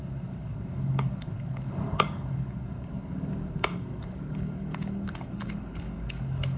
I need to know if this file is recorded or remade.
remade